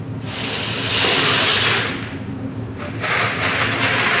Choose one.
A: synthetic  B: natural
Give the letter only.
B